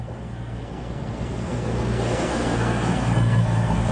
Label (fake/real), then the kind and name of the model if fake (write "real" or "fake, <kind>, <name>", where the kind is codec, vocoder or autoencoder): fake, codec, SNAC